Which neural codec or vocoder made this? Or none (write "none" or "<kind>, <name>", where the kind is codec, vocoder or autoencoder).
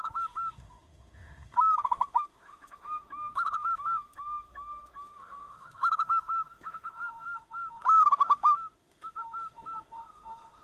autoencoder, DAC-VAE